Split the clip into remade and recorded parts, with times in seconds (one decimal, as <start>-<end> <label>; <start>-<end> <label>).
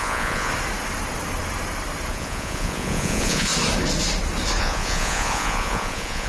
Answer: 0.0-0.5 remade; 0.5-2.1 recorded; 2.1-3.5 remade; 3.5-4.6 recorded; 4.6-6.3 remade